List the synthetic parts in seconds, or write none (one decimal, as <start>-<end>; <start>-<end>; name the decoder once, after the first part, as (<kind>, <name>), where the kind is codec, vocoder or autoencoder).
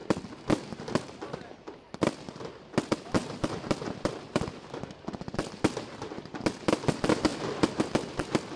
none